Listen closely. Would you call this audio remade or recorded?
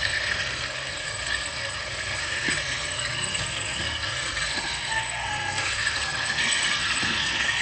remade